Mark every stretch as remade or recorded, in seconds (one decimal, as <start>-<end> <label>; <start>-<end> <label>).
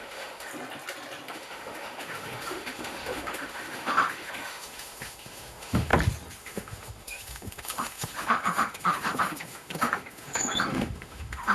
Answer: 0.0-0.5 remade; 0.5-1.3 recorded; 1.3-5.9 remade; 5.9-6.4 recorded; 6.4-11.5 remade